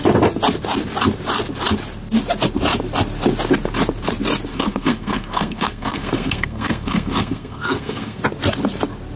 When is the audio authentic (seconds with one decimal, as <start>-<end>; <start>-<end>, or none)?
0.0-4.5; 8.2-9.2